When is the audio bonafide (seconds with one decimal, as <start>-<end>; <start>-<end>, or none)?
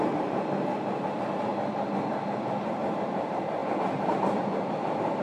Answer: 1.5-2.9